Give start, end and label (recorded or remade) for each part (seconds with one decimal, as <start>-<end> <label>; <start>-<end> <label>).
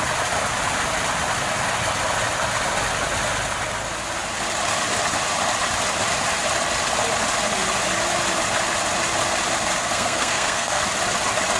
0.0-9.8 recorded; 9.8-10.8 remade; 10.8-11.6 recorded